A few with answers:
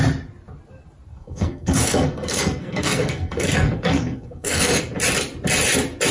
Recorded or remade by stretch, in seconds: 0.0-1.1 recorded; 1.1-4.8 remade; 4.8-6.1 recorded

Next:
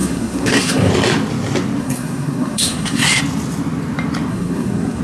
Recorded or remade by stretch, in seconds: 0.0-0.9 remade; 0.9-1.8 recorded; 1.8-3.2 remade; 3.2-4.3 recorded; 4.3-5.0 remade